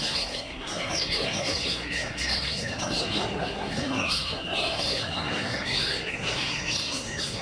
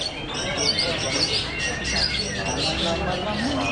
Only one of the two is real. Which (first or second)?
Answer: second